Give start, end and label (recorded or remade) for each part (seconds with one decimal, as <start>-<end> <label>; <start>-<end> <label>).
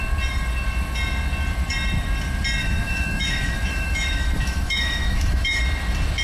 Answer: 0.0-2.6 recorded; 2.6-5.6 remade; 5.6-6.2 recorded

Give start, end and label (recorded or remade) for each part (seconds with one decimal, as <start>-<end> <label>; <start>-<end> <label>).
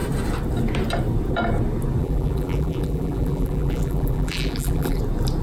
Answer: 0.0-2.0 recorded; 2.0-5.0 remade; 5.0-5.4 recorded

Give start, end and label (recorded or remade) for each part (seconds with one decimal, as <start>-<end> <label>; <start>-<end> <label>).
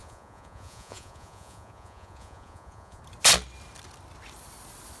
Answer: 0.0-3.0 remade; 3.0-5.0 recorded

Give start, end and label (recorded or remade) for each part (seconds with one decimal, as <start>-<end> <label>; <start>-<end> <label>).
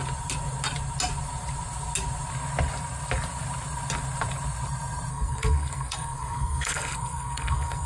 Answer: 0.0-5.1 recorded; 5.1-7.9 remade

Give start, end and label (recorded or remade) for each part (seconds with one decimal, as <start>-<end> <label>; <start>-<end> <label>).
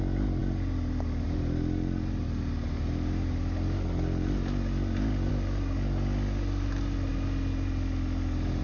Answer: 0.0-8.6 recorded